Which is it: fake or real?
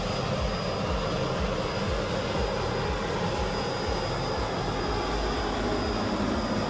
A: real